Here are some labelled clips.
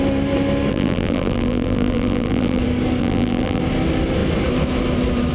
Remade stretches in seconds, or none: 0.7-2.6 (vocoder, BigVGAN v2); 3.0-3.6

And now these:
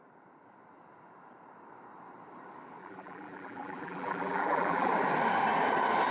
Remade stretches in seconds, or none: 2.8-4.9 (vocoder, BigVGAN v2)

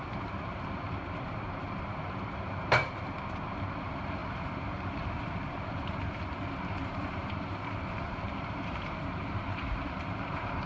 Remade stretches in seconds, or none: 0.0-10.7 (vocoder, BigVGAN v2)

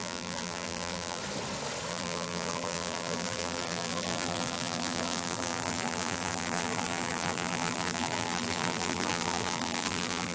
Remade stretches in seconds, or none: 0.0-1.2 (vocoder, BigVGAN v2); 1.9-10.3

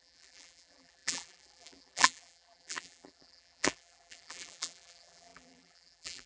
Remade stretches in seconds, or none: 0.0-6.3 (vocoder, BigVGAN v2)

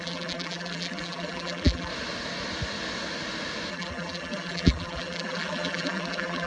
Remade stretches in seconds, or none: 0.0-1.9 (vocoder, BigVGAN v2); 3.7-6.5

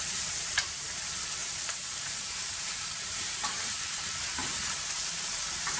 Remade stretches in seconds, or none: 0.0-4.4 (vocoder, BigVGAN v2); 4.9-5.8

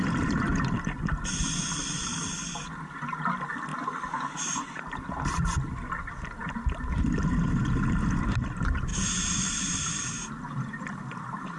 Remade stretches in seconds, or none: 1.8-2.6 (vocoder, BigVGAN v2); 8.9-11.6